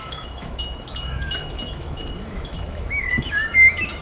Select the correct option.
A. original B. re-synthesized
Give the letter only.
B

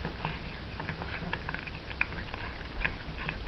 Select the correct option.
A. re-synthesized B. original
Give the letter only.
B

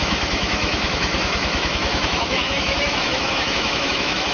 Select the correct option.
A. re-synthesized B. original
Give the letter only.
A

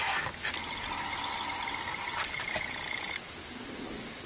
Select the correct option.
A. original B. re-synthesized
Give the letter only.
A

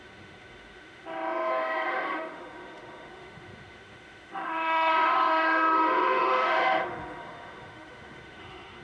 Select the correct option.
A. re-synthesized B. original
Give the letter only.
A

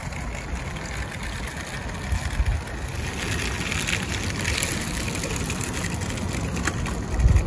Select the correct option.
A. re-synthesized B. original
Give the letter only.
B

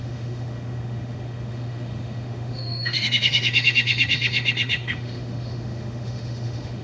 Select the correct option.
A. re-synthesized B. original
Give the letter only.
A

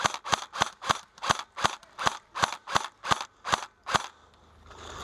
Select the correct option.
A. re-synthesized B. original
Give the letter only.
B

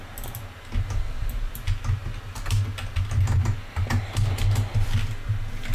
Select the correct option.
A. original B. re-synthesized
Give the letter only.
A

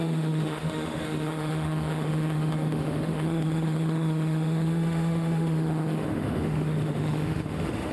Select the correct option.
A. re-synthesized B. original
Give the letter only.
A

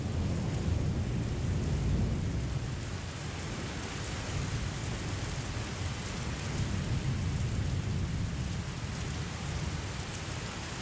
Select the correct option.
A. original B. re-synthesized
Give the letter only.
A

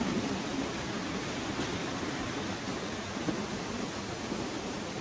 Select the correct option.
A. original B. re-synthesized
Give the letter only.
A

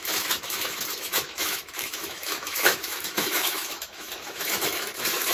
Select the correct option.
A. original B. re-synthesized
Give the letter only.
B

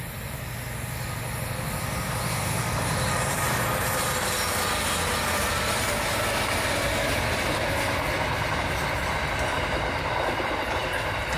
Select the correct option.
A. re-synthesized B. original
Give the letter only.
B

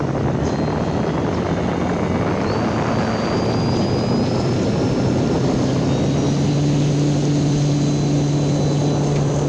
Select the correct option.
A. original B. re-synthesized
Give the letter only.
A